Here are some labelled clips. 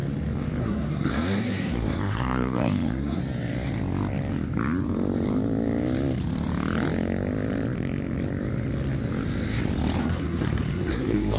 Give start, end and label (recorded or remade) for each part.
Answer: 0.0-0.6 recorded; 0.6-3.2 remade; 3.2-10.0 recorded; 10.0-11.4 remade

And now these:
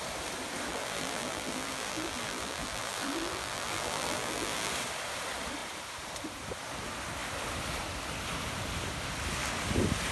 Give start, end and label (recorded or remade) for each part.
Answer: 0.0-0.7 recorded; 0.7-4.7 remade; 4.7-10.1 recorded

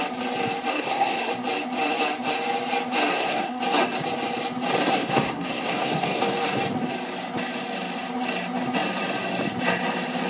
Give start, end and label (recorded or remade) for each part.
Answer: 0.0-0.7 recorded; 0.7-1.3 remade; 1.3-3.1 recorded; 3.1-3.6 remade; 3.6-4.9 recorded; 4.9-6.2 remade; 6.2-10.3 recorded

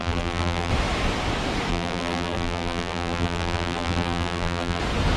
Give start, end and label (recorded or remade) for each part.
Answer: 0.0-0.7 remade; 0.7-1.7 recorded; 1.7-4.8 remade; 4.8-5.2 recorded

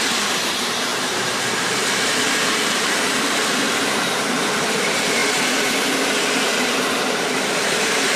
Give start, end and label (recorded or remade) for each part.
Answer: 0.0-8.2 remade